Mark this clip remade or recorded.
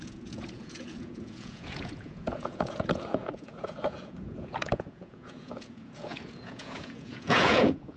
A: remade